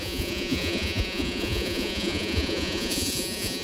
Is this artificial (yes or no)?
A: yes